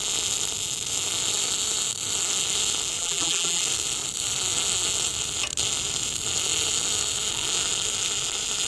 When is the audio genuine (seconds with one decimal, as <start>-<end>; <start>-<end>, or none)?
0.0-3.0; 3.6-8.7